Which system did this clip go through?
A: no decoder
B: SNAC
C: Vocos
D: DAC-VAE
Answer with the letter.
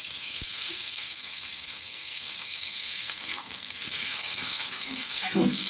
B